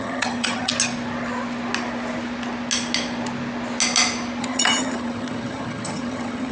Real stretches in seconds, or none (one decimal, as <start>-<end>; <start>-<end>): 0.7-4.4